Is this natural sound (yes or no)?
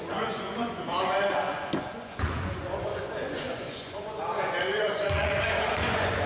no